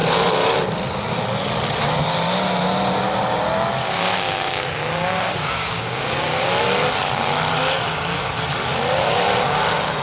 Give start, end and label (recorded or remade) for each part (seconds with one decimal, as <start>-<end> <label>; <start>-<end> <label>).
0.0-3.8 recorded; 3.8-6.5 remade; 6.5-10.0 recorded